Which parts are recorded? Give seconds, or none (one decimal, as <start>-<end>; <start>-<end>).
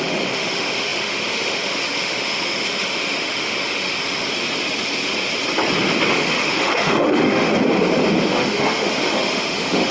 4.3-6.1; 7.5-8.3